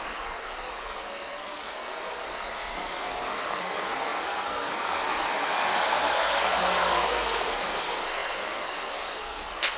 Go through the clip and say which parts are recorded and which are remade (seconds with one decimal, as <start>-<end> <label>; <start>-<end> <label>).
0.0-9.8 remade